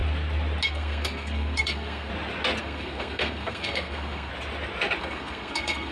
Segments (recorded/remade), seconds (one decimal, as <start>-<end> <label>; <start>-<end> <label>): 0.0-0.7 recorded; 0.7-2.1 remade; 2.1-2.6 recorded; 2.6-4.3 remade; 4.3-5.0 recorded; 5.0-5.9 remade